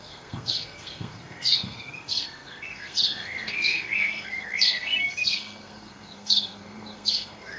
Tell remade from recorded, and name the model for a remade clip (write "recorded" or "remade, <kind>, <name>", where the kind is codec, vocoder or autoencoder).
remade, codec, SNAC